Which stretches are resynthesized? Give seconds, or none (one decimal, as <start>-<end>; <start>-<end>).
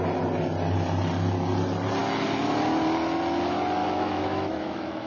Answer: 3.8-5.1